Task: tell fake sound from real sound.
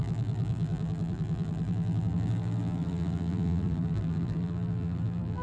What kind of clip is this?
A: fake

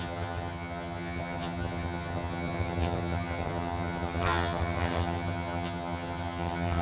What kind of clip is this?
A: fake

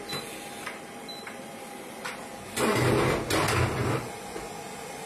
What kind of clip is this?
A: real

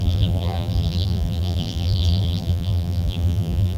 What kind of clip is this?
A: fake